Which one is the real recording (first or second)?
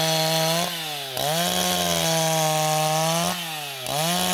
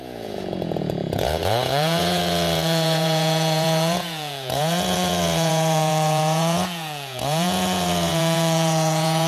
first